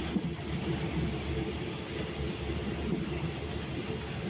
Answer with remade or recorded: recorded